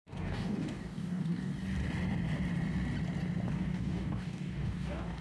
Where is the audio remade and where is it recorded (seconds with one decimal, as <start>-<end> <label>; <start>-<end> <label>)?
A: 0.0-1.5 remade; 1.5-3.5 recorded; 3.5-5.2 remade